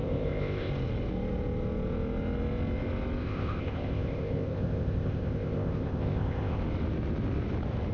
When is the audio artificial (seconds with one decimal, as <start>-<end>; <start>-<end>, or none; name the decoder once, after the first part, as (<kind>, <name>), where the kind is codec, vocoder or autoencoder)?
0.0-0.7 (codec, ZipCodec); 3.2-6.6